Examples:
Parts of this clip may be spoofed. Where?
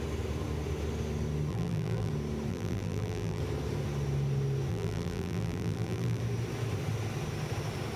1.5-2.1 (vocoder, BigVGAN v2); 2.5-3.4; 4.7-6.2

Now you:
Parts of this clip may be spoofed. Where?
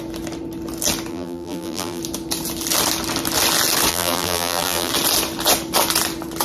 1.1-2.0 (vocoder, BigVGAN v2); 3.9-4.9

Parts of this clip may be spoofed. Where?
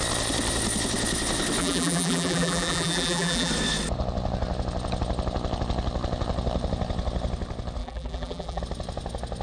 1.6-3.5 (vocoder, BigVGAN v2); 7.8-8.6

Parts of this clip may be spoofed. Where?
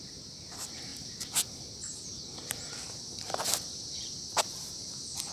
0.0-5.3 (vocoder, BigVGAN v2)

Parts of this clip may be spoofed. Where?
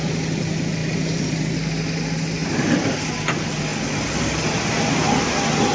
0.8-1.4 (vocoder, BigVGAN v2); 2.4-3.1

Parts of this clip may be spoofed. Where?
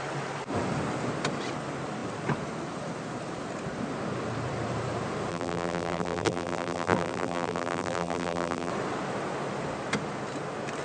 5.3-8.7 (vocoder, BigVGAN v2)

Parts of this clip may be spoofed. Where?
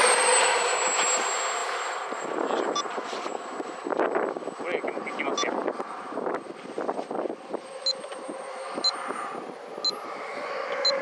none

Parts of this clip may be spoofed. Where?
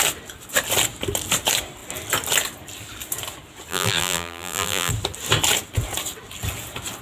3.7-4.9 (vocoder, BigVGAN v2)